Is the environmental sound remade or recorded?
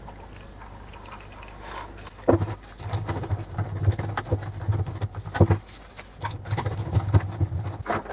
recorded